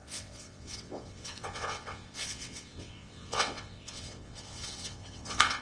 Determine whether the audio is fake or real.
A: fake